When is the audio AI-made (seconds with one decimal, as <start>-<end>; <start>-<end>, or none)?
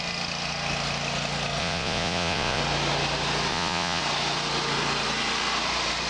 1.6-2.6; 3.5-4.0